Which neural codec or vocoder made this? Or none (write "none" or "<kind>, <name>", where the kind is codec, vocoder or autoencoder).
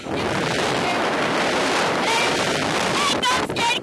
vocoder, BigVGAN v2